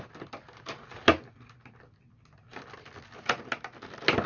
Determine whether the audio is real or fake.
real